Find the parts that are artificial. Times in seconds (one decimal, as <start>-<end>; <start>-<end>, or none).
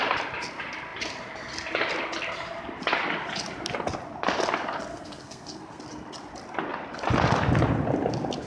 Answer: 4.9-5.8